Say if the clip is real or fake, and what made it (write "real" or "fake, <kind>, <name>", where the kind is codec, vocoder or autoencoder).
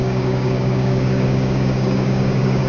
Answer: fake, codec, DAC